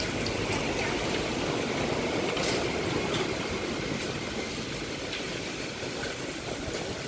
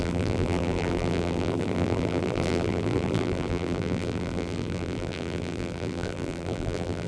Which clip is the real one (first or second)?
first